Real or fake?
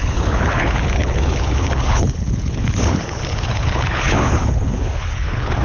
fake